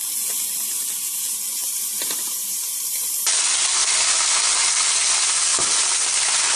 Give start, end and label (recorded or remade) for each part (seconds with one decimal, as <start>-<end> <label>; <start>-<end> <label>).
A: 0.0-1.6 recorded; 1.6-3.4 remade; 3.4-3.8 recorded; 3.8-4.5 remade; 4.5-6.6 recorded